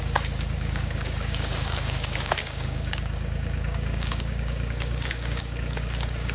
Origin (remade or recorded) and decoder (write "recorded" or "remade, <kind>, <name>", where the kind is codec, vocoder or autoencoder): remade, codec, DAC